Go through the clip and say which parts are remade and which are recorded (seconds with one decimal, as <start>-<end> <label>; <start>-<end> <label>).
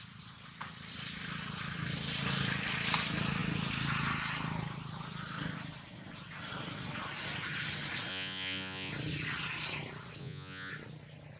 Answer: 0.0-8.1 recorded; 8.1-8.9 remade; 8.9-10.2 recorded; 10.2-10.7 remade; 10.7-11.4 recorded